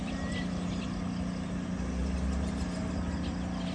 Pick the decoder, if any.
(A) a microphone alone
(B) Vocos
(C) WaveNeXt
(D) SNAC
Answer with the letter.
A